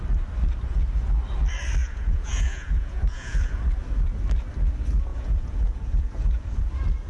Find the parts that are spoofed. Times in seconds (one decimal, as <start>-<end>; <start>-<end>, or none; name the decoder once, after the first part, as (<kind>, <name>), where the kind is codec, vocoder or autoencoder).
1.8-3.6 (vocoder, Vocos); 5.1-6.6